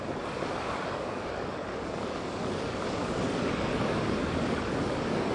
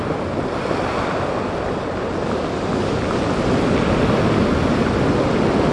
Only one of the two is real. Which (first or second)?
second